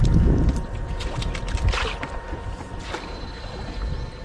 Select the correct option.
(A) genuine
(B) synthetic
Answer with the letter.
A